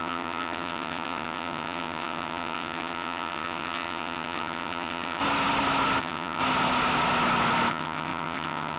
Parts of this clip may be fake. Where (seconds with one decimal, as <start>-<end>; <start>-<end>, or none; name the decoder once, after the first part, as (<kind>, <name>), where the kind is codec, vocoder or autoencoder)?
0.0-5.2 (vocoder, HiFi-GAN); 6.0-6.4; 7.7-8.8